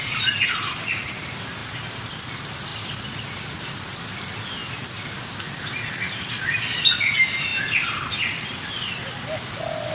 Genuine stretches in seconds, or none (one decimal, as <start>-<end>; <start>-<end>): 0.0-9.9